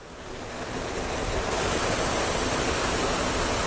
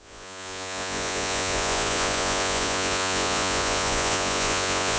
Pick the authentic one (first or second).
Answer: first